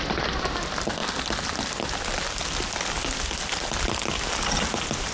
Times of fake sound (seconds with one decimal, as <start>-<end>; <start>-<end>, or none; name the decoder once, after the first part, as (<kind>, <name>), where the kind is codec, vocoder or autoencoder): none